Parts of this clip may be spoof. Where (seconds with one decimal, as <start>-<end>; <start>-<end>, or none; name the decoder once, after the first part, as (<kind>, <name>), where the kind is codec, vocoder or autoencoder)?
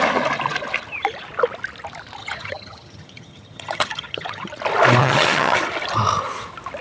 2.2-4.5 (vocoder, HiFi-GAN); 5.0-5.6